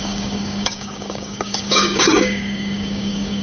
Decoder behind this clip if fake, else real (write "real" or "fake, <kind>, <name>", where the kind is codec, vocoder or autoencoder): fake, codec, DAC